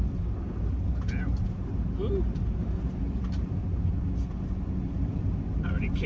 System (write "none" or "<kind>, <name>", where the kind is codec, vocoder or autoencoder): none